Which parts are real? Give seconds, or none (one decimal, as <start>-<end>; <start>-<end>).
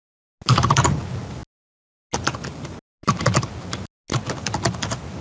0.0-5.2